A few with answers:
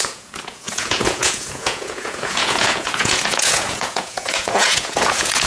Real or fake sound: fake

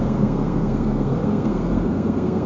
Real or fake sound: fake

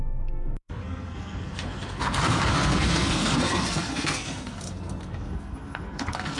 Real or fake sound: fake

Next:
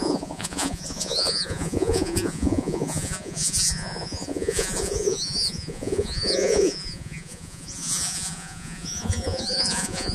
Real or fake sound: fake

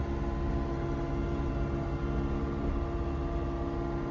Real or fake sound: real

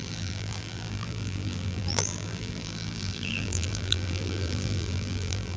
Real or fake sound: fake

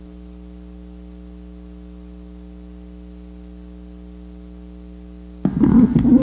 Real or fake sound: real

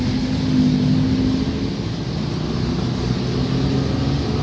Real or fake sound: real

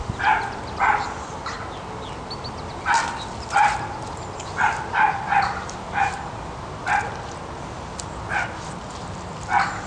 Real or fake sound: real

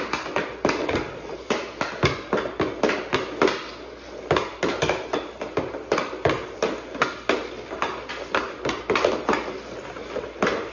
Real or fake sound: real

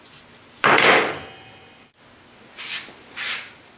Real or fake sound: real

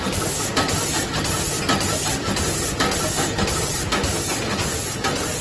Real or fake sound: real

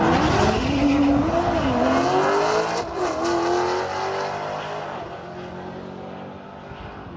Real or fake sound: real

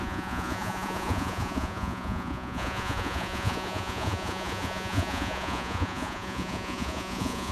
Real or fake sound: fake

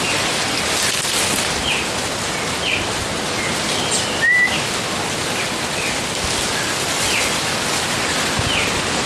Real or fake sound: real